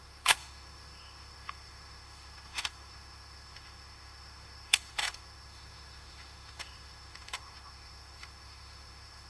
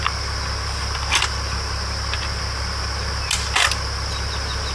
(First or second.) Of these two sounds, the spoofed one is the first